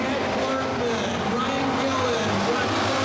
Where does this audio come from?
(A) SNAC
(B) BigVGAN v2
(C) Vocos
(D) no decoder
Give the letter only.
D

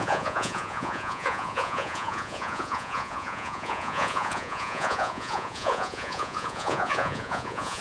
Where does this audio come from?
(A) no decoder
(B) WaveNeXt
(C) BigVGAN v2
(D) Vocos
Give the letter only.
D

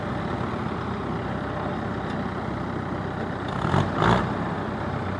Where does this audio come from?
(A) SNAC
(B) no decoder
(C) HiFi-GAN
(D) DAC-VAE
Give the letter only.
B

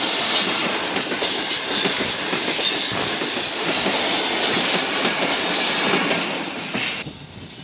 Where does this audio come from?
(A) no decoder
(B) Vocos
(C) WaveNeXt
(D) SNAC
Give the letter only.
A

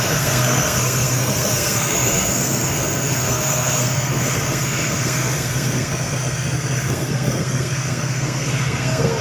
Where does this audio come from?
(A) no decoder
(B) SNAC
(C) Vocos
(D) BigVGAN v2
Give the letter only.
B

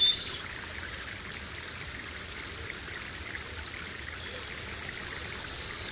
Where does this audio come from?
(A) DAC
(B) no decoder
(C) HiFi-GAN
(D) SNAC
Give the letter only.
B